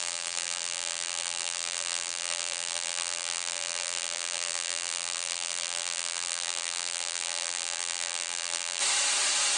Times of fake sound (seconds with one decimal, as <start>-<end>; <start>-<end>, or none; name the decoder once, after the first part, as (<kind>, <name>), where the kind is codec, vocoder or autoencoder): 0.0-8.8 (vocoder, BigVGAN v2)